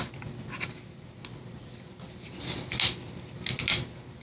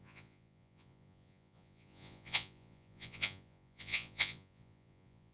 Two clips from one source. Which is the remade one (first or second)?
second